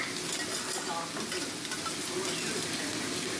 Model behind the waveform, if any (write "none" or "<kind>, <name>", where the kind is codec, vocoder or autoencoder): none